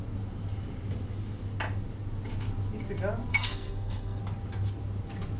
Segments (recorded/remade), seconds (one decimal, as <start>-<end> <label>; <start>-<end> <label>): 0.0-3.3 recorded; 3.3-4.2 remade; 4.2-5.4 recorded